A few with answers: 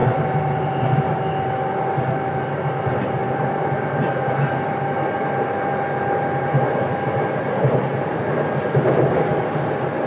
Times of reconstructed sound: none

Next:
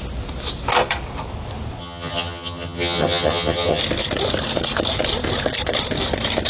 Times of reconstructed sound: 1.8-3.8 (vocoder, HiFi-GAN)

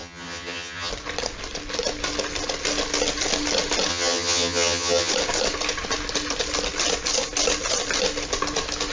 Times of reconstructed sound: 0.0-0.9 (vocoder, HiFi-GAN); 3.9-5.1

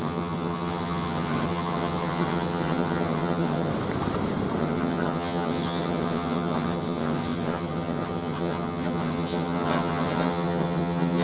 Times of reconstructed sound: 0.0-3.7 (vocoder, HiFi-GAN); 4.6-11.2

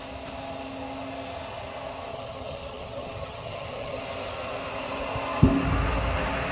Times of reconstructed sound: 2.1-4.0 (vocoder, HiFi-GAN)

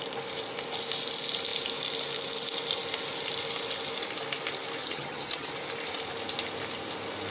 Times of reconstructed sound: 4.8-5.5 (vocoder, HiFi-GAN)

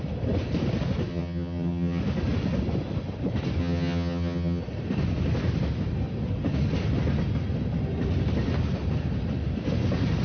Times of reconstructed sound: 1.1-2.0 (vocoder, HiFi-GAN); 3.6-4.6

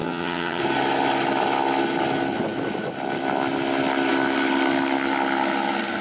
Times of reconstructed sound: 0.0-0.6 (vocoder, HiFi-GAN)